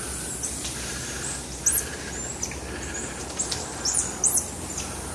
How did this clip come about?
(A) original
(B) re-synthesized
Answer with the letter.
A